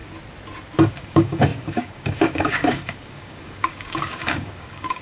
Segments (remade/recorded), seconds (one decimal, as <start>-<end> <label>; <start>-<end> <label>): 0.0-0.9 recorded; 0.9-5.0 remade